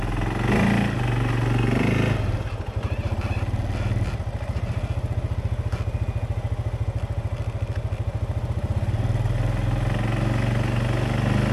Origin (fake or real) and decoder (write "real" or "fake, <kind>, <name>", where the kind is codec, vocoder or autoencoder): real